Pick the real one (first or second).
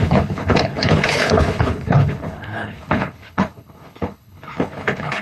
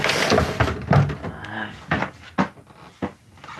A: second